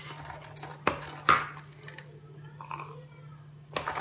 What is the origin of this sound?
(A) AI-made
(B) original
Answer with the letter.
B